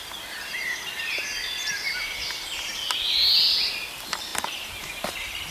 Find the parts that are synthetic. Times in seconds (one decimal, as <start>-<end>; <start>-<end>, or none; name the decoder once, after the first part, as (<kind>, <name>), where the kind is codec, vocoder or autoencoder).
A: 0.0-4.3 (vocoder, BigVGAN v2)